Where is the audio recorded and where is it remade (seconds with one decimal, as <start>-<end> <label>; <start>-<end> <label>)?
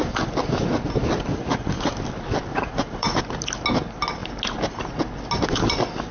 0.0-1.3 recorded; 1.3-1.9 remade; 1.9-2.5 recorded; 2.5-3.2 remade; 3.2-6.1 recorded